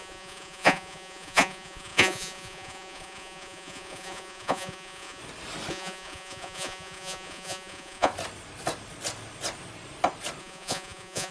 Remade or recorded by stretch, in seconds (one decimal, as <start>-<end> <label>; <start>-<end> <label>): 0.0-5.2 remade; 5.2-5.7 recorded; 5.7-8.1 remade; 8.1-10.4 recorded; 10.4-11.3 remade